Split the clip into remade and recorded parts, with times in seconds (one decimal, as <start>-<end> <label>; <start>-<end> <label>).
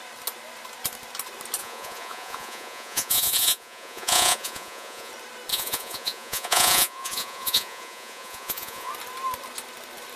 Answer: 0.0-1.6 recorded; 1.6-5.1 remade; 5.1-5.5 recorded; 5.5-8.9 remade; 8.9-10.2 recorded